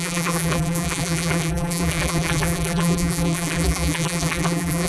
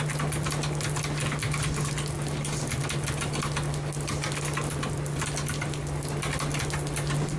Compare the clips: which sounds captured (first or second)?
second